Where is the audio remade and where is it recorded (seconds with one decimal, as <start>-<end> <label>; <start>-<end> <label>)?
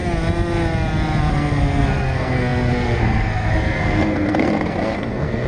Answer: 0.0-1.3 recorded; 1.3-5.5 remade